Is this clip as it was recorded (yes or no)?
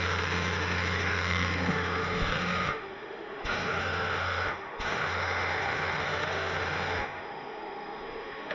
no